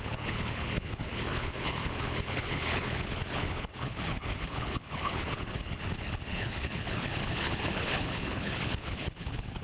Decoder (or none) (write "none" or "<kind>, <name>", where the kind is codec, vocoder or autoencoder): codec, HILCodec